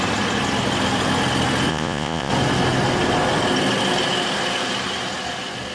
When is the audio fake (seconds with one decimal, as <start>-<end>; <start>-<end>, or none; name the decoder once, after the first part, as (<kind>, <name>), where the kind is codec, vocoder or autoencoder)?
1.7-2.3 (vocoder, Vocos)